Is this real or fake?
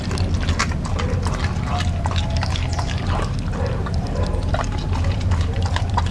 real